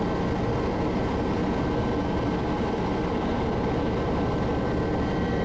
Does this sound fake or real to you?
real